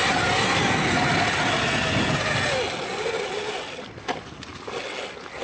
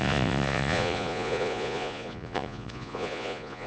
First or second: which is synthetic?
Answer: second